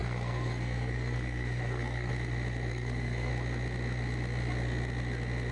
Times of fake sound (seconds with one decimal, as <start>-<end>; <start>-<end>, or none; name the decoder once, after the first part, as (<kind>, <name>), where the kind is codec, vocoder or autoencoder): 0.0-2.1 (codec, SNAC); 2.7-3.3